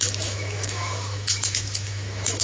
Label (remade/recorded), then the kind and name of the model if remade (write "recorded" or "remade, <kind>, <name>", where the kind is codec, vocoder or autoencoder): remade, autoencoder, DAC-VAE